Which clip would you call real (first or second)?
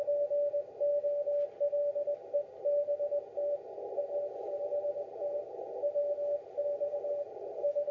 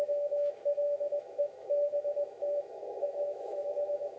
first